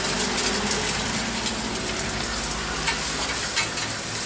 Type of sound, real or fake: real